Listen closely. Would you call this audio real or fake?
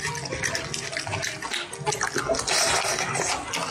real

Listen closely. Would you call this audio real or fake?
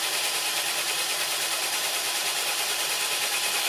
fake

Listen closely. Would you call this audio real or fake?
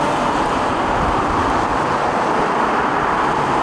real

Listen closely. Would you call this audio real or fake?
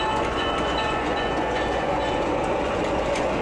fake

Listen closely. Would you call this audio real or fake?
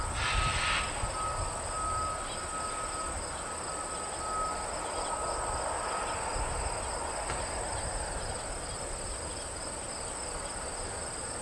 real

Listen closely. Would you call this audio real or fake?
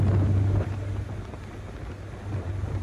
real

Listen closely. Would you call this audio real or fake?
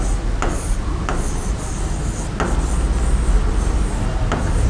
real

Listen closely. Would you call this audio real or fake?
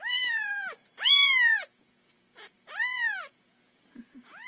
fake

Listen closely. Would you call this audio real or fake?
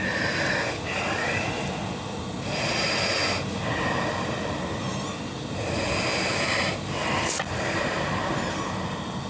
real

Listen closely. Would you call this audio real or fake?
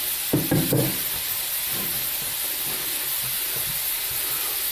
real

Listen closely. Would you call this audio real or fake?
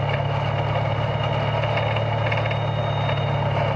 real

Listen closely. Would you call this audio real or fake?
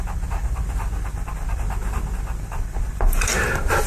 real